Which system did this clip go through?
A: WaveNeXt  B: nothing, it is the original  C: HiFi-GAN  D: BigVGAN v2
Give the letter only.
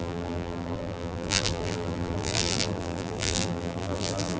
D